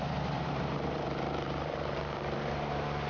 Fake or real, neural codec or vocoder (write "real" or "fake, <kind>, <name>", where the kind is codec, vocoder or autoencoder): fake, vocoder, BigVGAN v2